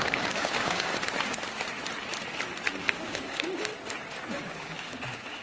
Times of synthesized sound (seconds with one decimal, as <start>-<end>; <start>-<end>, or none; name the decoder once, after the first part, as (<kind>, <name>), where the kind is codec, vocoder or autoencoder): 0.0-0.9 (codec, DAC); 2.7-3.7; 4.3-5.4